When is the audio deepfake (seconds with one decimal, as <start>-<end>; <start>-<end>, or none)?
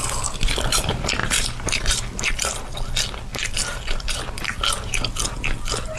1.2-2.3; 3.3-4.5